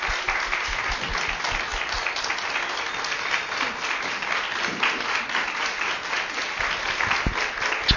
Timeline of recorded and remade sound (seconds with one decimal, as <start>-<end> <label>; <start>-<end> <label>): 0.0-8.0 recorded